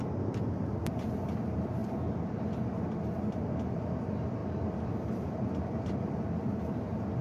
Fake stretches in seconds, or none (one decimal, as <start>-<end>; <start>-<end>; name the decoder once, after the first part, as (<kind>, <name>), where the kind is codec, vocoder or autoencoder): 0.0-1.8 (vocoder, BigVGAN v2); 4.0-7.2